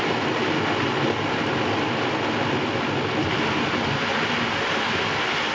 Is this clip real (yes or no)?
yes